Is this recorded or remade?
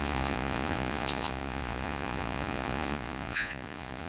remade